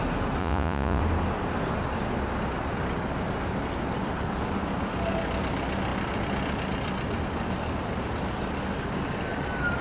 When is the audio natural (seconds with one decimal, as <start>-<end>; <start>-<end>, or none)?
0.0-0.4; 1.0-9.8